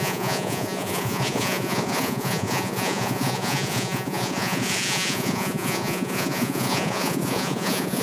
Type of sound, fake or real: fake